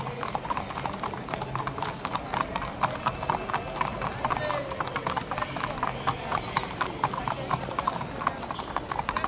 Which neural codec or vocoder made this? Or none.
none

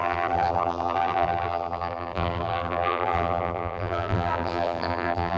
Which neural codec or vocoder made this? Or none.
vocoder, BigVGAN v2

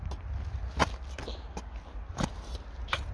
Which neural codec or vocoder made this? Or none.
none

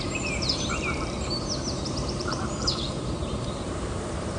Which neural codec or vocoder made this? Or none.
vocoder, BigVGAN v2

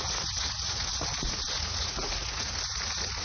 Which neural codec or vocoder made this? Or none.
vocoder, Vocos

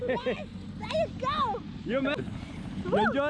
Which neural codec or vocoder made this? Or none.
none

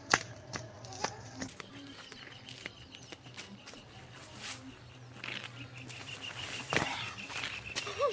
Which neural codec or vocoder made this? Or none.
none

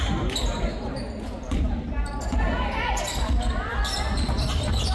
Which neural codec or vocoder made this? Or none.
none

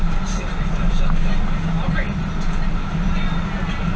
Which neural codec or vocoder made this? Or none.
none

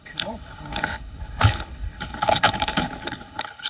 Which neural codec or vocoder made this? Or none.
codec, HILCodec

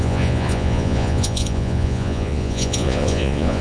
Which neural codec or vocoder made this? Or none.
vocoder, Vocos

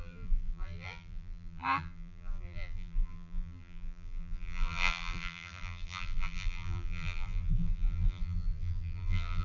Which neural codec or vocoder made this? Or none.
vocoder, BigVGAN v2